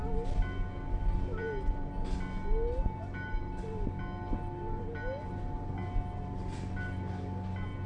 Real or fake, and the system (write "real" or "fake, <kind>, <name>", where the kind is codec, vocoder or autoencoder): real